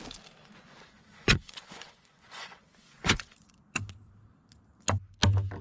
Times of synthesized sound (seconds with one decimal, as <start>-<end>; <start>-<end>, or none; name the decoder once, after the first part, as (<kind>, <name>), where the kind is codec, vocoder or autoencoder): 0.4-3.5 (vocoder, Vocos)